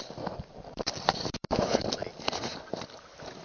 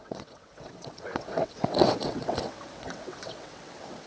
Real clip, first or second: first